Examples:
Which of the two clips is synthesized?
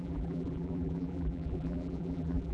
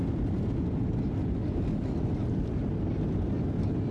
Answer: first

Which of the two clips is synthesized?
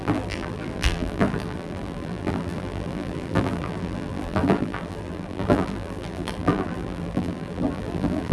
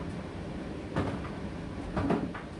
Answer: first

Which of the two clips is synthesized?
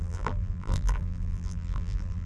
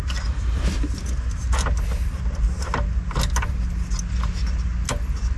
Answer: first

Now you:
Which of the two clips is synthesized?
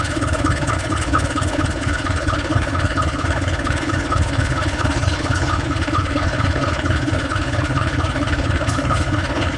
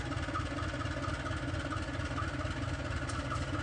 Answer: first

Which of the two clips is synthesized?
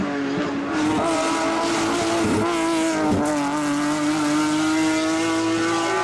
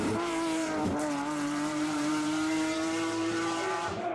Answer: second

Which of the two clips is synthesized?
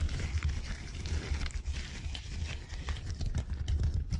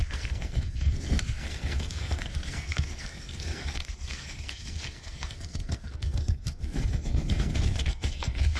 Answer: second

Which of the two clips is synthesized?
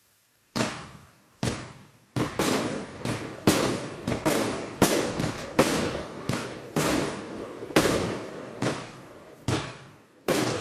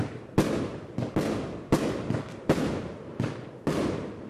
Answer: first